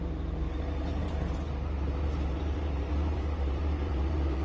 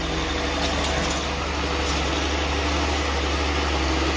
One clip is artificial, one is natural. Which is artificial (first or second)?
first